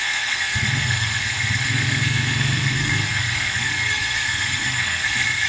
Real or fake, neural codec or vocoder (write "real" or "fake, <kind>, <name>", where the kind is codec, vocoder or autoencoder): fake, codec, SNAC